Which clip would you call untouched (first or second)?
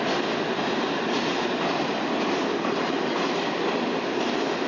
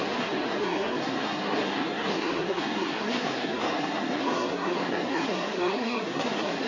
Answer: first